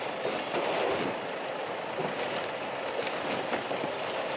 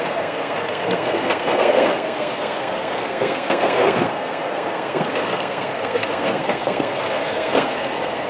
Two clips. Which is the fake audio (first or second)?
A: second